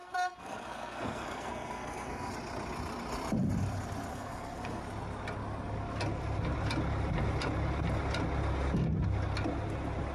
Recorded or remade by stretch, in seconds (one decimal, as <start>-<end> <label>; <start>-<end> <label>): 0.0-2.3 remade; 2.3-4.1 recorded; 4.1-4.8 remade; 4.8-10.1 recorded